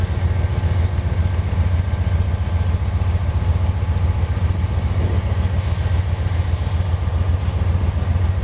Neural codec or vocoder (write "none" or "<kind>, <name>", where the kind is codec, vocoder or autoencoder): none